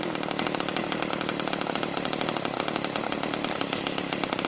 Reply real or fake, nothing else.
real